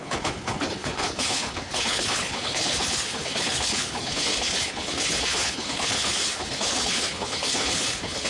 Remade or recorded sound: remade